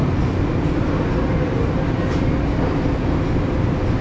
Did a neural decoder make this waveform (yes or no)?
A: no